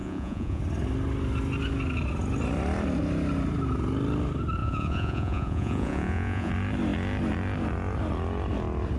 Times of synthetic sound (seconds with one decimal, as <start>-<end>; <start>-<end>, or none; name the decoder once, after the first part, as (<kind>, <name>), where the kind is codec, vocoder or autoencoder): 0.0-0.6 (vocoder, Vocos); 4.6-6.5